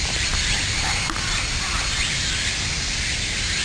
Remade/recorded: recorded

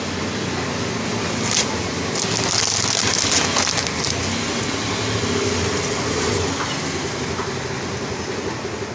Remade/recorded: recorded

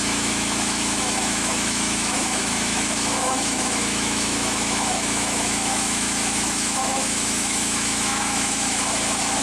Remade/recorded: remade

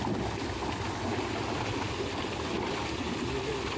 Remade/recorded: recorded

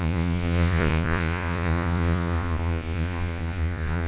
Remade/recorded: remade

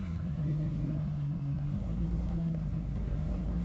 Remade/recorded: remade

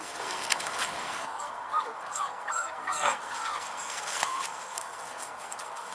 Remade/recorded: remade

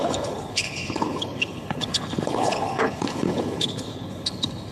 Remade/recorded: remade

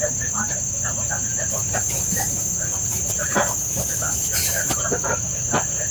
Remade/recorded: remade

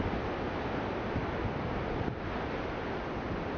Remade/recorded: recorded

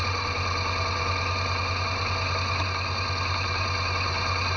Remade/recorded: recorded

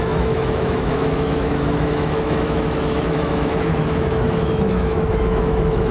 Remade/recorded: remade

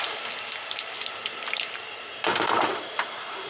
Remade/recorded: recorded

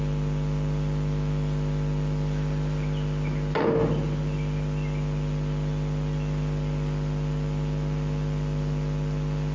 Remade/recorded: recorded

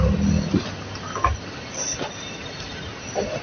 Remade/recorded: recorded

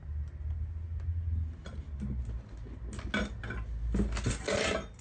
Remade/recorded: recorded